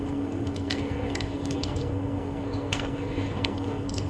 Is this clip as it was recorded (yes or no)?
no